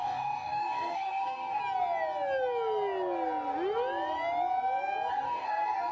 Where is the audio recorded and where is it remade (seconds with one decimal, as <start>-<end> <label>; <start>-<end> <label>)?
0.0-1.6 remade; 1.6-5.1 recorded; 5.1-5.9 remade